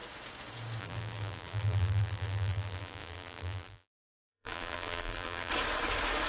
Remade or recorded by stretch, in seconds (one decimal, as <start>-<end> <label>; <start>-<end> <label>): 0.0-0.8 recorded; 0.8-5.5 remade; 5.5-6.3 recorded